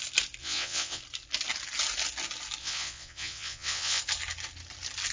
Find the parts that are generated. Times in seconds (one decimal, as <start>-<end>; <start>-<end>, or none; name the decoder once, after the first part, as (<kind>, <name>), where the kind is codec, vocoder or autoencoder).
0.4-1.0 (vocoder, WaveNeXt); 2.6-4.0